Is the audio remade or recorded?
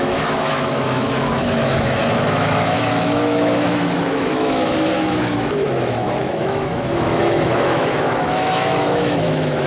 remade